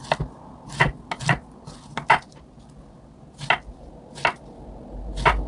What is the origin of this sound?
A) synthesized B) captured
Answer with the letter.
B